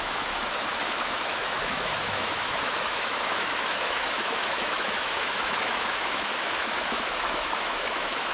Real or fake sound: fake